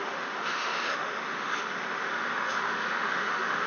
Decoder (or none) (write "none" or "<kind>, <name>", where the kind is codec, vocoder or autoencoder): autoencoder, DAC-VAE